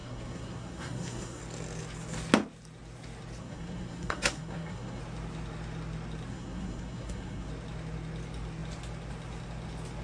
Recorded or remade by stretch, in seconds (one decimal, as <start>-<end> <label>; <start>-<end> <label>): 0.0-1.4 remade; 1.4-3.4 recorded; 3.4-5.0 remade; 5.0-6.3 recorded; 6.3-7.5 remade; 7.5-10.0 recorded